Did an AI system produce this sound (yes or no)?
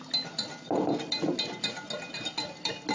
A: no